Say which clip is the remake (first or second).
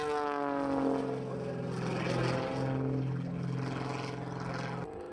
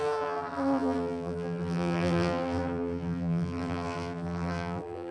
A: second